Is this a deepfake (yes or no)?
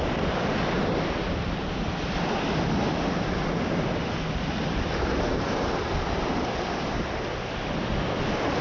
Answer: no